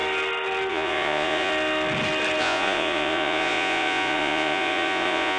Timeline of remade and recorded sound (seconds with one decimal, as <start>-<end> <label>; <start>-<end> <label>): 0.0-0.7 recorded; 0.7-1.5 remade; 1.5-2.4 recorded; 2.4-5.4 remade